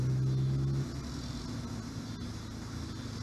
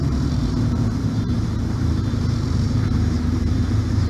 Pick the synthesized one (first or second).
second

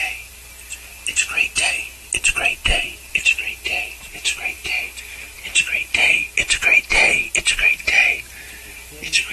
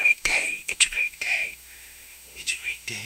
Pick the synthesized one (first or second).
second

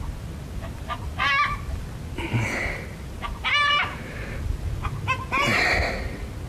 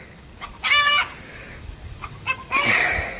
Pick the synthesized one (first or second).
second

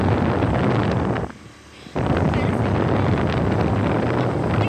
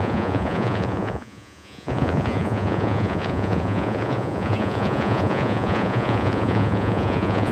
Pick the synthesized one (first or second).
second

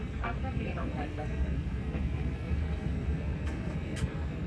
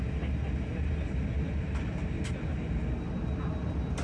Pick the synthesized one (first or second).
first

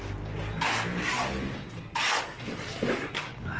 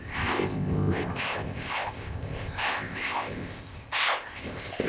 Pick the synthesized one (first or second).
second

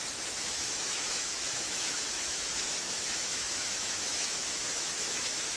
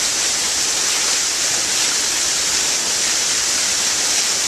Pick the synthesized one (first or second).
first